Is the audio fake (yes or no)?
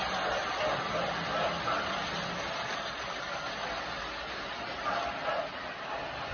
no